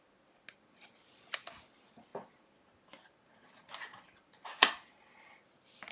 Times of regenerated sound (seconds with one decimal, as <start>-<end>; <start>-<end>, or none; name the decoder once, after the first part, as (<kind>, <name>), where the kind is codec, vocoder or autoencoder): none